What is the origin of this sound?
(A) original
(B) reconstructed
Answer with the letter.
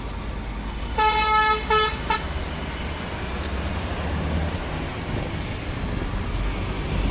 A